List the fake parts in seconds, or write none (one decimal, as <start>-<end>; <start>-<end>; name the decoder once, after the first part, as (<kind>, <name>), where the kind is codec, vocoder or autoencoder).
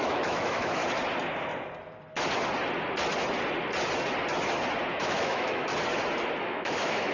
0.0-0.8 (autoencoder, DAC-VAE); 4.9-5.7; 6.4-7.1